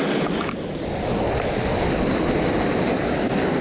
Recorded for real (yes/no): yes